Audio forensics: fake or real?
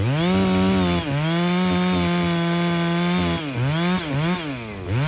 real